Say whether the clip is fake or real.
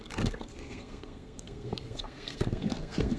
fake